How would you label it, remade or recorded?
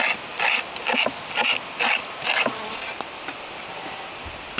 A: recorded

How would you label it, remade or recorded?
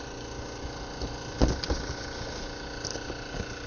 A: recorded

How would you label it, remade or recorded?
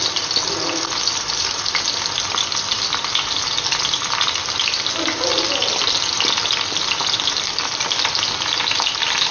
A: recorded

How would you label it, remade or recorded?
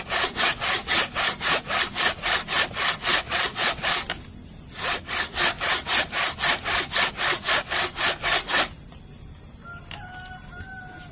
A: recorded